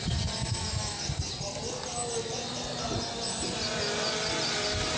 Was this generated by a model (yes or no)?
no